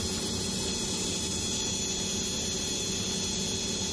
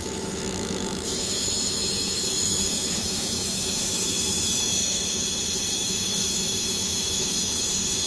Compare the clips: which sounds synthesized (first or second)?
second